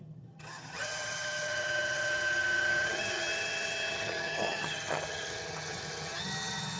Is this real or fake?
fake